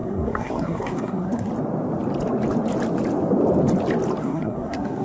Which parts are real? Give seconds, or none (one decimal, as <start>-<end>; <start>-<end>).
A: 1.5-4.2